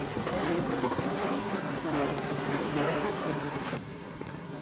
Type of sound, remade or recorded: remade